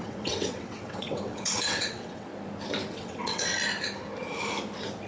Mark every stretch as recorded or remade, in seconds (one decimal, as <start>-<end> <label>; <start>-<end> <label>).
0.0-2.3 remade; 2.3-2.9 recorded; 2.9-3.5 remade; 3.5-5.1 recorded